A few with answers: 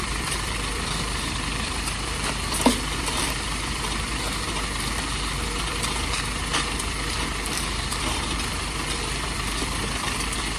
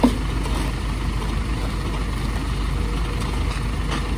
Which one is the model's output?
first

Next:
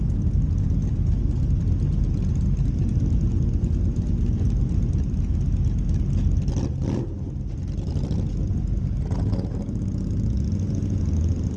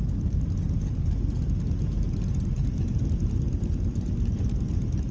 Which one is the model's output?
second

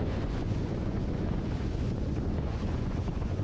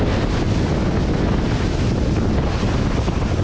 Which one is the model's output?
first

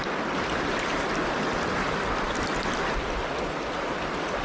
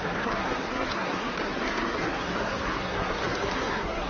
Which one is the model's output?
second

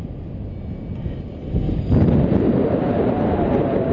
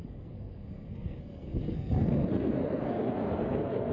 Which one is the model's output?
second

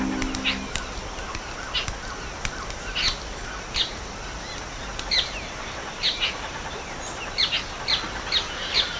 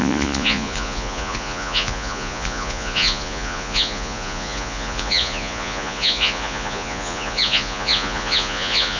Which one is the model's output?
second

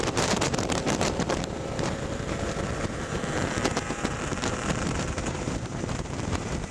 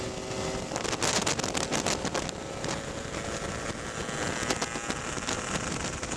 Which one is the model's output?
first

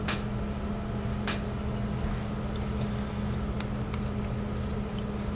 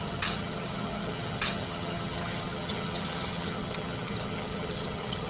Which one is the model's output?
second